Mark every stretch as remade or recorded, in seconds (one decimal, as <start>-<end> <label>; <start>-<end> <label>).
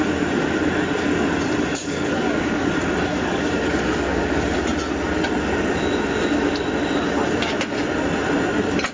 0.0-1.7 recorded; 1.7-2.7 remade; 2.7-3.1 recorded; 3.1-4.6 remade; 4.6-8.9 recorded